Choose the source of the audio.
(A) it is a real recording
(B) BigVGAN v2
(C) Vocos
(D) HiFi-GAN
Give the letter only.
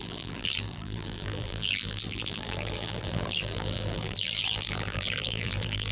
B